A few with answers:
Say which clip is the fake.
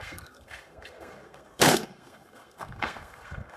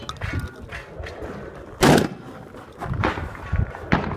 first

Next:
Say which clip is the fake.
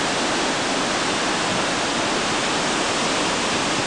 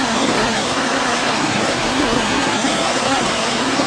second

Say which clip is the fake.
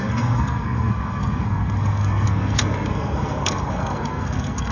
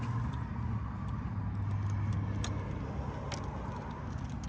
first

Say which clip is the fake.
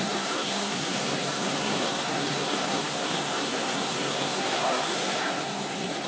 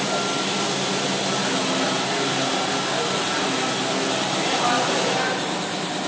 first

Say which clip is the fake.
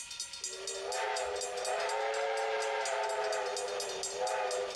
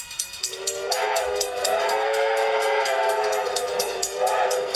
second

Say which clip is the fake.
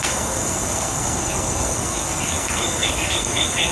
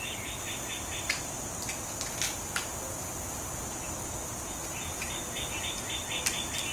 first